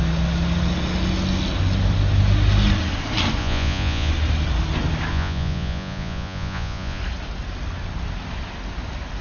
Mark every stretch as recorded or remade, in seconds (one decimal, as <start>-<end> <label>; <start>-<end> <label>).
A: 0.0-3.4 recorded; 3.4-4.1 remade; 4.1-5.1 recorded; 5.1-7.0 remade; 7.0-9.2 recorded